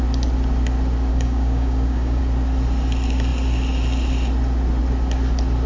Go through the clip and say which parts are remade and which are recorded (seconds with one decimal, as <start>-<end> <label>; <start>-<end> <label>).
0.0-1.1 recorded; 1.1-2.2 remade; 2.2-5.7 recorded